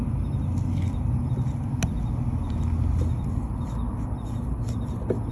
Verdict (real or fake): real